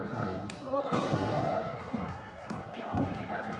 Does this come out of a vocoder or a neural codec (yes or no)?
yes